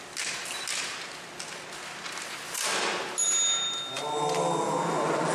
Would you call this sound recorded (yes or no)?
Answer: yes